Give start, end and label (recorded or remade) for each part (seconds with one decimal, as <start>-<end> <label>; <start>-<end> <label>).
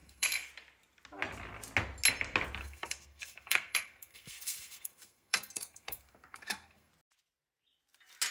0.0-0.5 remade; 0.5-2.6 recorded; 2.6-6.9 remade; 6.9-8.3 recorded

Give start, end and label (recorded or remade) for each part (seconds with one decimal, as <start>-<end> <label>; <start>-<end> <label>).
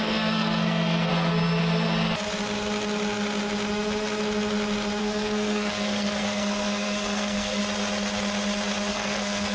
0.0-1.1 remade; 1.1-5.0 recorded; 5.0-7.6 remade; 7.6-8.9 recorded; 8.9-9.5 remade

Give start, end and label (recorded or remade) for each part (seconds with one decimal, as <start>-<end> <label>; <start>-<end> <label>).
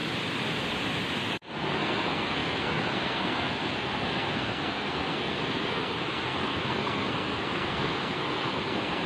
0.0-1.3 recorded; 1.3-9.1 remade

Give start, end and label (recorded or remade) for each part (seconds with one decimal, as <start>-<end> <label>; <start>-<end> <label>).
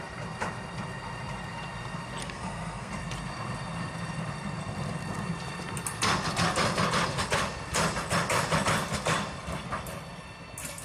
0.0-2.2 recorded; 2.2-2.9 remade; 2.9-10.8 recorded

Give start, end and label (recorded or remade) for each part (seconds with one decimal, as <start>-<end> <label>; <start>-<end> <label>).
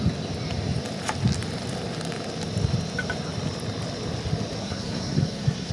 0.0-4.6 recorded; 4.6-5.7 remade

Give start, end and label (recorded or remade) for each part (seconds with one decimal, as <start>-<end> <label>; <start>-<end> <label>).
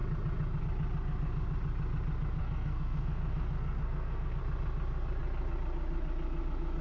0.0-2.4 recorded; 2.4-4.4 remade; 4.4-6.8 recorded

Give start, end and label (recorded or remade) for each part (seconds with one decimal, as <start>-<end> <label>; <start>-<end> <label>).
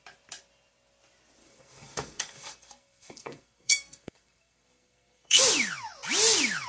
0.0-1.4 recorded; 1.4-5.4 remade; 5.4-6.7 recorded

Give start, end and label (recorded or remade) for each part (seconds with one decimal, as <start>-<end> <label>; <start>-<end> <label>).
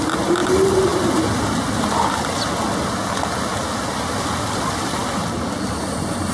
0.0-6.3 recorded